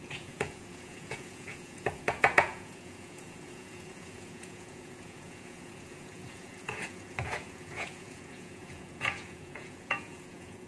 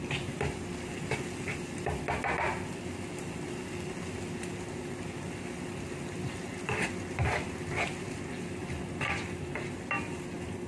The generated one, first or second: first